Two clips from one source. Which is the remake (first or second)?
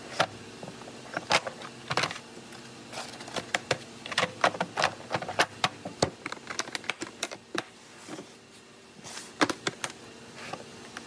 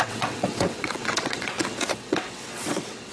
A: second